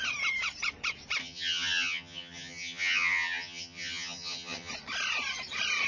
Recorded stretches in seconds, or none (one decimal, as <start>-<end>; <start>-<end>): 0.0-1.2; 4.7-5.9